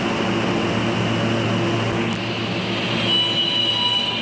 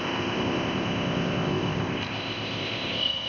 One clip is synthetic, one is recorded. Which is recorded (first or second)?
first